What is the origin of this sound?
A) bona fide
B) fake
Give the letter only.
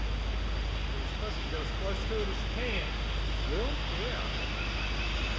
A